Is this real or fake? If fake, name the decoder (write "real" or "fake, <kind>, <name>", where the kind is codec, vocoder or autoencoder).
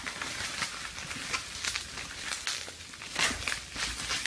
real